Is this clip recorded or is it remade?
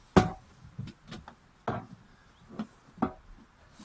recorded